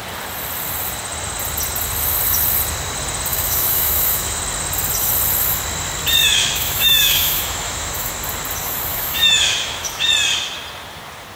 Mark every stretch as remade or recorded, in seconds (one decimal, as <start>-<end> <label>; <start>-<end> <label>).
0.0-3.3 recorded; 3.3-4.4 remade; 4.4-6.2 recorded; 6.2-8.1 remade; 8.1-8.9 recorded; 8.9-10.1 remade; 10.1-11.4 recorded